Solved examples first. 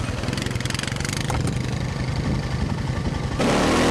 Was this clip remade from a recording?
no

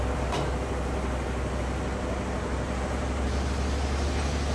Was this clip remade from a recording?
no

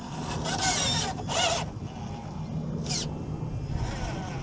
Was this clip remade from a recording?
no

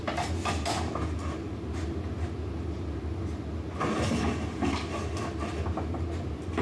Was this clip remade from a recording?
no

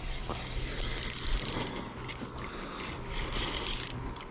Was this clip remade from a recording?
no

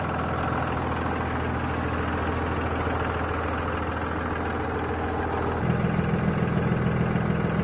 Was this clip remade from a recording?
no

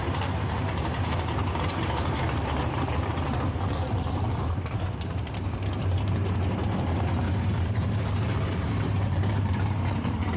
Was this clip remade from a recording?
yes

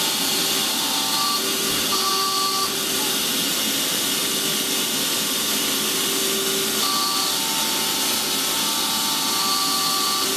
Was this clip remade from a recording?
no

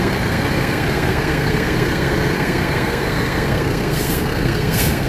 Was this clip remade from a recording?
yes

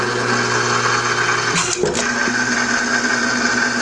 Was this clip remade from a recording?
no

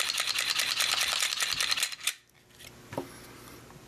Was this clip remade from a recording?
yes